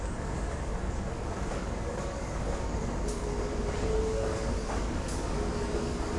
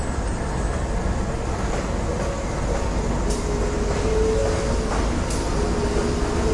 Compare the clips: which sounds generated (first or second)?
first